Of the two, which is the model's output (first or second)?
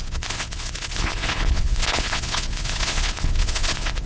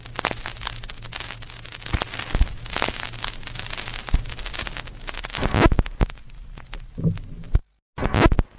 first